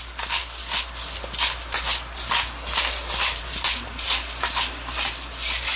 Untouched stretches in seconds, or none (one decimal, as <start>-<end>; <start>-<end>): 0.0-5.8